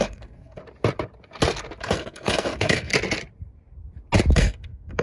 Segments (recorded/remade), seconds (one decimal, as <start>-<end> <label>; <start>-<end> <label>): 0.0-0.6 remade; 0.6-1.8 recorded; 1.8-2.9 remade; 2.9-4.3 recorded; 4.3-5.0 remade